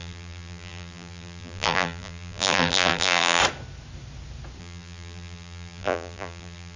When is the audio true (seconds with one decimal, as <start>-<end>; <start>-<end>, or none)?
3.4-4.6